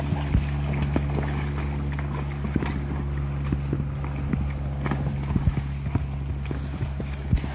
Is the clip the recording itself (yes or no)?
yes